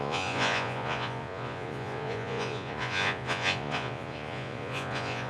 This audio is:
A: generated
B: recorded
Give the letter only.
A